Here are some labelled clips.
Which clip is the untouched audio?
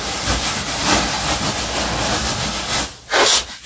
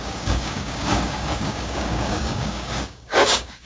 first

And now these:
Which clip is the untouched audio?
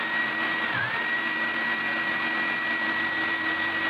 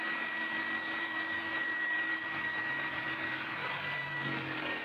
first